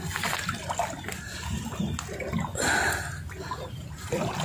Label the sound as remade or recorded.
recorded